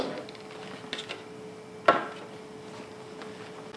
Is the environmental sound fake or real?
real